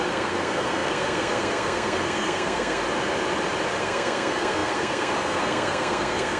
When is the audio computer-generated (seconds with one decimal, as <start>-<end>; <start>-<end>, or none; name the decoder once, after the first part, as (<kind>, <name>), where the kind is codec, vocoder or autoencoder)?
0.0-2.8 (codec, SNAC); 3.8-6.4